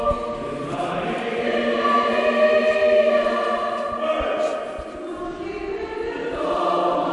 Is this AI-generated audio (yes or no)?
no